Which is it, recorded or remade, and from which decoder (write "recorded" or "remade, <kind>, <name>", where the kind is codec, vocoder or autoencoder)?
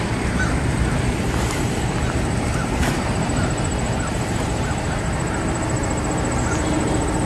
remade, vocoder, BigVGAN v2